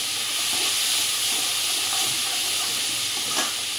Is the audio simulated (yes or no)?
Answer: no